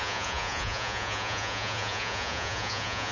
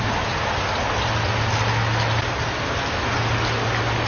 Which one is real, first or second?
second